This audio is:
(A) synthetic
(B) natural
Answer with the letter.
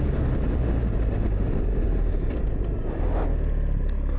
B